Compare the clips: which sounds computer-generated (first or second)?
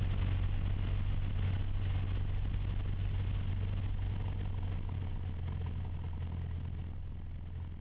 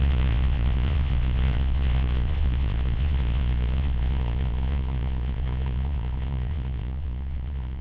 second